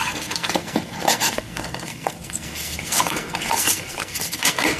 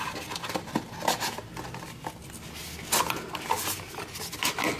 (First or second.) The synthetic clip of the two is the first